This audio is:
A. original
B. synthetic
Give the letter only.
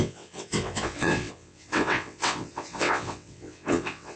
B